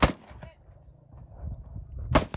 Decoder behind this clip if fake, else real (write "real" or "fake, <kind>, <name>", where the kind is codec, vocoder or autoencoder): real